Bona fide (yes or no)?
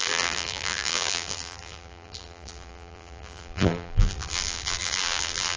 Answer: no